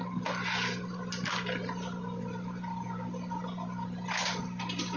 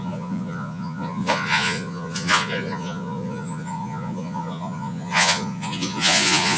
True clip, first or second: first